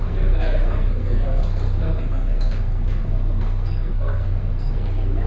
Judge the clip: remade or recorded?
remade